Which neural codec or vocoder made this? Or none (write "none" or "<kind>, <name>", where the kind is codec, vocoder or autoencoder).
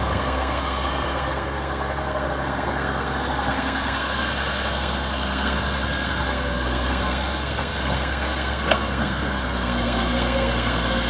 codec, SNAC